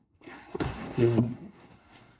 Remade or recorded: remade